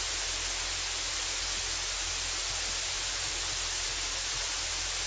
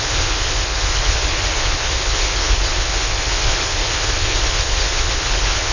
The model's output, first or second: second